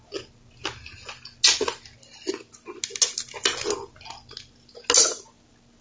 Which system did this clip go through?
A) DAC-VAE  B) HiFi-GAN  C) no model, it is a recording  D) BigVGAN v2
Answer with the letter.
C